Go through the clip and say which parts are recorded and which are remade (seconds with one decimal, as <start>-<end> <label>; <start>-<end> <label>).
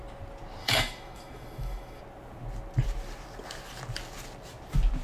0.0-0.6 recorded; 0.6-2.0 remade; 2.0-5.0 recorded